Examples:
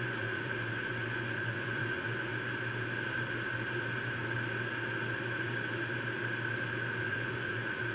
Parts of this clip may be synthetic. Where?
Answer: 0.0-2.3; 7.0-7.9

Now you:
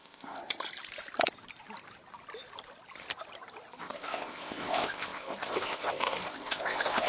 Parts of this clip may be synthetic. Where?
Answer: 0.0-0.4; 3.8-7.1

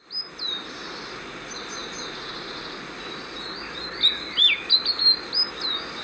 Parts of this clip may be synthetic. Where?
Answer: none

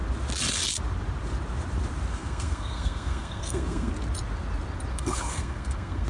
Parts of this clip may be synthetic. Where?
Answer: 2.1-3.9; 4.9-6.1

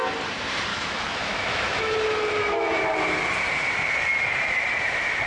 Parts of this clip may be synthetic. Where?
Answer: 0.7-2.8

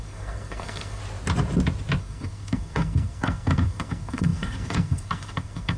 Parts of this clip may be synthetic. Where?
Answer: 0.0-1.0; 2.0-5.8

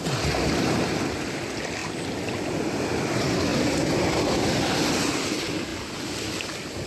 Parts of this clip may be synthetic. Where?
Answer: none